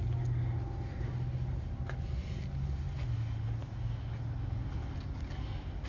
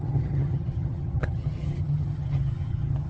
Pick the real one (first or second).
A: first